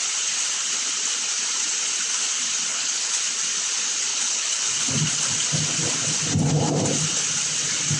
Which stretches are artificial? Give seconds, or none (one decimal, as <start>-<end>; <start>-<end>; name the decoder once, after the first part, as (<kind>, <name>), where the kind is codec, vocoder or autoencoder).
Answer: 2.7-3.2 (codec, HILCodec); 4.1-4.7